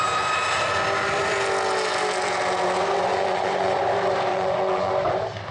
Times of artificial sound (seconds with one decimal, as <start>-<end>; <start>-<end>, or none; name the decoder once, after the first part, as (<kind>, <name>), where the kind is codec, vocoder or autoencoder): 3.1-3.8 (vocoder, Vocos); 4.3-4.9